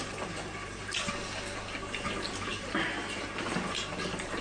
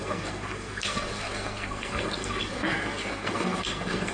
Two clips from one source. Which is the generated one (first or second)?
second